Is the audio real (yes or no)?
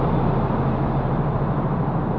yes